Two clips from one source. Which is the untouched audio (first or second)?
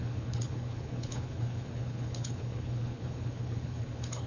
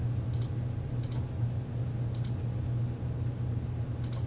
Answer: second